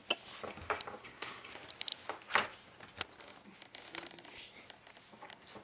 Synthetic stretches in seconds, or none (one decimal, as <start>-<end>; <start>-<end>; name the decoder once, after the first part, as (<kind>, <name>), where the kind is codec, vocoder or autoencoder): 1.0-1.5 (codec, SNAC)